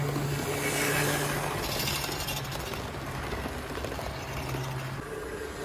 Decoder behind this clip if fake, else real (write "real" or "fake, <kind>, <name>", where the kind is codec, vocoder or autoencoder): real